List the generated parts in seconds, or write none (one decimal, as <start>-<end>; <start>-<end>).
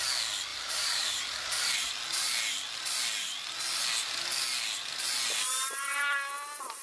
0.5-1.9